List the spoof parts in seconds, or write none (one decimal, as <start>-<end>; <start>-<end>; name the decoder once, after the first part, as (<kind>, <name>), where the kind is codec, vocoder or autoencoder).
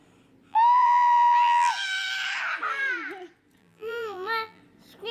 0.5-1.7 (vocoder, BigVGAN v2); 3.6-4.6